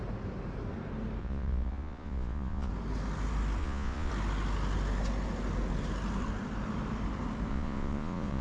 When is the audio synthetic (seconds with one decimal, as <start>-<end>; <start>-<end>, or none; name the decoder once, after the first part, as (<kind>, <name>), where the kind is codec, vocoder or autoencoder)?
1.2-2.7 (vocoder, Vocos); 3.6-4.1; 7.5-8.4